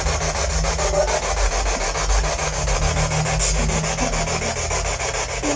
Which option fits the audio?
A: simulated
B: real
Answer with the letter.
B